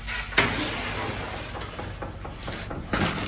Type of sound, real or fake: real